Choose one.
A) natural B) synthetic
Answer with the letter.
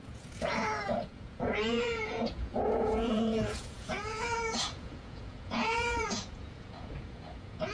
B